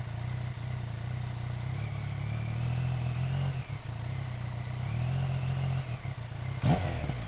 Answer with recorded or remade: recorded